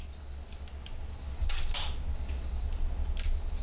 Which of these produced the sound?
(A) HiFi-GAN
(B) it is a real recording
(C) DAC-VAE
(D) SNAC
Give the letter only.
B